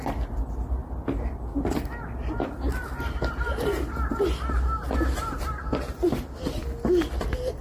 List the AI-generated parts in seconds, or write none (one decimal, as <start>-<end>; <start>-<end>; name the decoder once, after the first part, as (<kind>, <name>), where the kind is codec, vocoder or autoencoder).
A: none